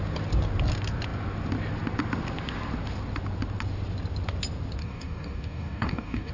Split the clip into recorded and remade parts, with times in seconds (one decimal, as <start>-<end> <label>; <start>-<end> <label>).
0.0-4.8 recorded; 4.8-6.3 remade